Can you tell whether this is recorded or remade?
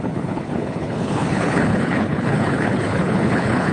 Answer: remade